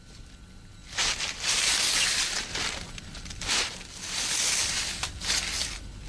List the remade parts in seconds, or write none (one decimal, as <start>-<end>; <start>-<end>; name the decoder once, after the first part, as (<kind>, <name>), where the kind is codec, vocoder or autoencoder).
none